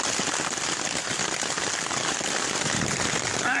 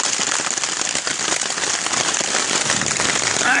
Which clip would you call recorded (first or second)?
first